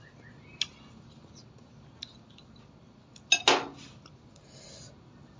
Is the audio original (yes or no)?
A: yes